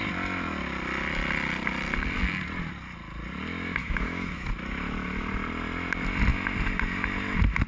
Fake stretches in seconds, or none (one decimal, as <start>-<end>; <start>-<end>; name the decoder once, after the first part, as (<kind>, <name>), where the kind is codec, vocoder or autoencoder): 3.8-4.5 (autoencoder, DAC-VAE)